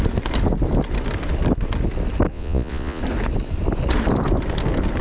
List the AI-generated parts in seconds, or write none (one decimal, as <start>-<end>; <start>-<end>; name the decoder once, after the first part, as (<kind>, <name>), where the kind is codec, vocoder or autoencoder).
2.3-3.0 (vocoder, Vocos)